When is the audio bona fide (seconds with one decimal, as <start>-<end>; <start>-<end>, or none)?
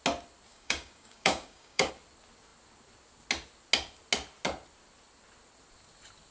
0.0-0.5; 1.9-6.3